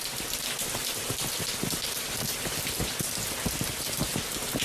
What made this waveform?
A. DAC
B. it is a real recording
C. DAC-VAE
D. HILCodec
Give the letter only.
B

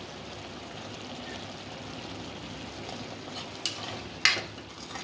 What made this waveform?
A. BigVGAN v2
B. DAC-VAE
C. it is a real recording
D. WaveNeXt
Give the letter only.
C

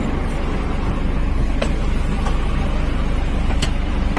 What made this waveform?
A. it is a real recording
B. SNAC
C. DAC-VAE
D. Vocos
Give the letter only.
A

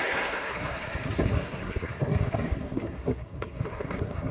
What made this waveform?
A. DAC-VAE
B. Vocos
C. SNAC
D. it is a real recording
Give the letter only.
C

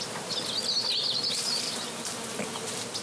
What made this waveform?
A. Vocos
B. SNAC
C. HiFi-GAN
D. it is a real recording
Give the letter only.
D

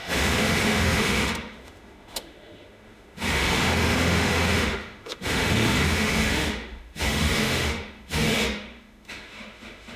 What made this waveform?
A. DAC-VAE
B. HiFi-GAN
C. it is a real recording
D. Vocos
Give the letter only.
A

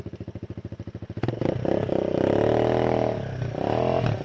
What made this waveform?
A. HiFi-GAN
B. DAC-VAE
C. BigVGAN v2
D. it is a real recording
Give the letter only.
D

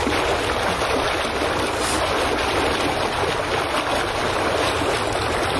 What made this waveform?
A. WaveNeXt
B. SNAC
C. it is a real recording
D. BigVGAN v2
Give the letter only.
C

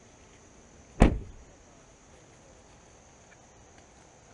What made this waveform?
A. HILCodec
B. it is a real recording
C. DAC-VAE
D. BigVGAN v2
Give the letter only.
B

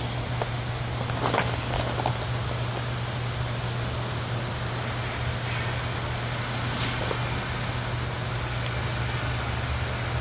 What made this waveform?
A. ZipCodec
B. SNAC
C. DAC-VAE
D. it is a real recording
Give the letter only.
D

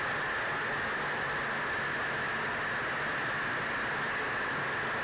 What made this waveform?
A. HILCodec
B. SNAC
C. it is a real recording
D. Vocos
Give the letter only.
C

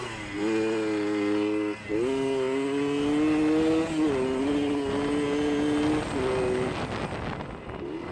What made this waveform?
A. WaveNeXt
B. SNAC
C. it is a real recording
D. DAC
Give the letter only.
C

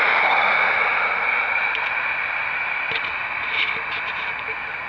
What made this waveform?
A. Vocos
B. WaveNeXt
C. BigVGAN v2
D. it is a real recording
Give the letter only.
D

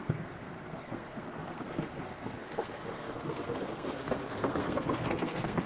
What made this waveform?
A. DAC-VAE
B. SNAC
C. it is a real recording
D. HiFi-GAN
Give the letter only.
B